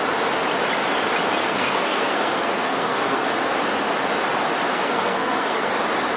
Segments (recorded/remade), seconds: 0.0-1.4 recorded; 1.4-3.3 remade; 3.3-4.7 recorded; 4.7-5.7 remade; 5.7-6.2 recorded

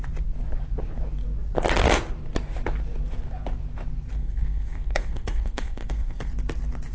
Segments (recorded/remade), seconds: 0.0-4.1 recorded; 4.1-6.3 remade; 6.3-6.9 recorded